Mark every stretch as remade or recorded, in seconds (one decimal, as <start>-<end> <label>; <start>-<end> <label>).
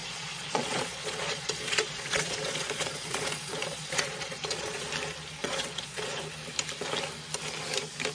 0.0-4.9 remade; 4.9-5.4 recorded; 5.4-6.2 remade; 6.2-8.1 recorded